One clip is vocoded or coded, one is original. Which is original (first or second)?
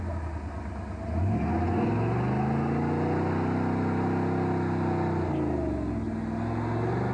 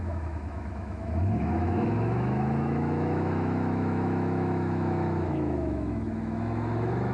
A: first